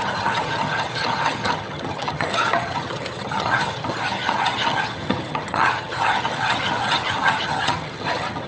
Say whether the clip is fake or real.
fake